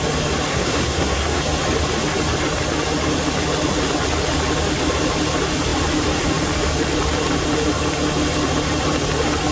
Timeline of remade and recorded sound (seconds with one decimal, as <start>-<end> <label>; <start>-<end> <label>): 0.0-0.5 recorded; 0.5-1.4 remade; 1.4-9.5 recorded